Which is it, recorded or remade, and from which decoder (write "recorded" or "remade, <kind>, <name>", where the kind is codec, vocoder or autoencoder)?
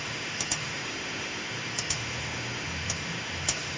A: remade, autoencoder, DAC-VAE